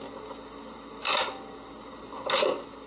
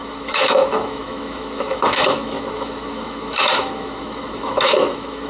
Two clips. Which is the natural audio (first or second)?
first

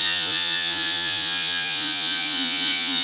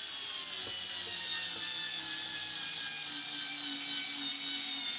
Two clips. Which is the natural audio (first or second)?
second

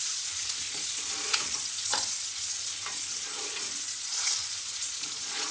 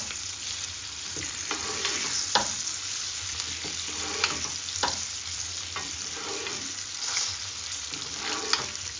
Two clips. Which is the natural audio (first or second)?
second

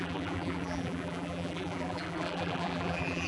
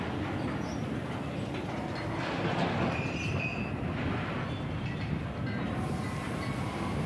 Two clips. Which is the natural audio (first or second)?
second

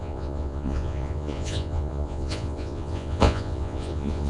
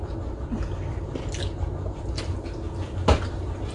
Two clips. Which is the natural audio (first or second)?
second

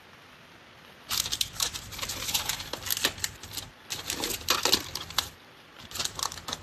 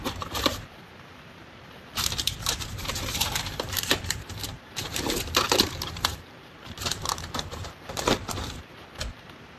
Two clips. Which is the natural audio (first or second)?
first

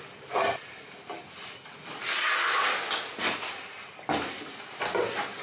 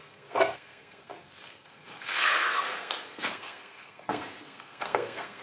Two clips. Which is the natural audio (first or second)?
first